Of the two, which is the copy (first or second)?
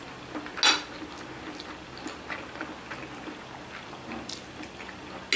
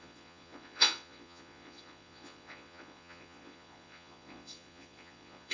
second